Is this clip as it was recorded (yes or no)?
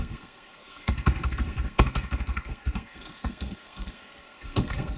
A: no